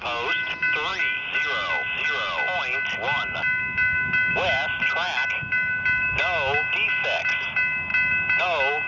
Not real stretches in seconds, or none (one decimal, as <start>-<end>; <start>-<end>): none